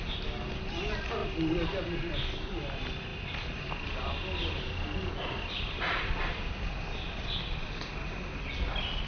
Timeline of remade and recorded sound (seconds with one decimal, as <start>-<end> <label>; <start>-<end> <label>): 0.0-9.1 recorded